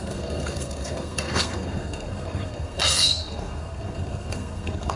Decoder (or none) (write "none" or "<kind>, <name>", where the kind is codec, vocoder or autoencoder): codec, SNAC